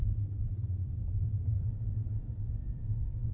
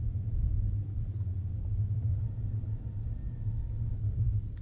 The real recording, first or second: second